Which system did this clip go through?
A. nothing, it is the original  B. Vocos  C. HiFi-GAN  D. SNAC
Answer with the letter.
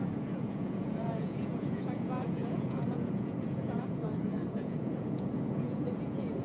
B